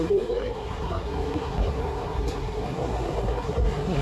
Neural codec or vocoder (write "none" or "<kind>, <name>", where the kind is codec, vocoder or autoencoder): codec, SNAC